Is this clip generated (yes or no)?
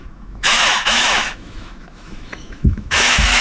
yes